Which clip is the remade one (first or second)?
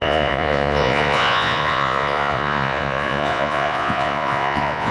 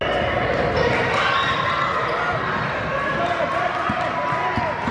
first